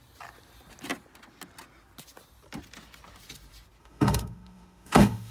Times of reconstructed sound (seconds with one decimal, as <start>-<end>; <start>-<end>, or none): 3.8-5.3